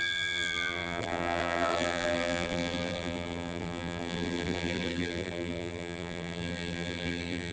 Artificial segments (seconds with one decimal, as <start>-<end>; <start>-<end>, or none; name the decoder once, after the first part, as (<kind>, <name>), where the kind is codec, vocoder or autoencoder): 0.0-7.5 (vocoder, BigVGAN v2)